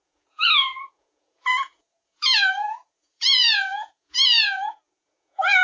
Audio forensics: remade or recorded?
remade